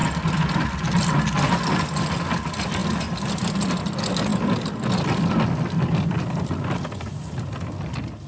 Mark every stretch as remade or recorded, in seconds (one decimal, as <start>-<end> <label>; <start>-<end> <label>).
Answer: 0.0-8.3 recorded